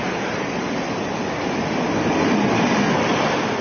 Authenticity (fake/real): real